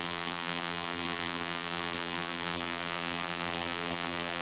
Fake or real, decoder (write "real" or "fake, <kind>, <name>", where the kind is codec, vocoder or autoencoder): fake, vocoder, BigVGAN v2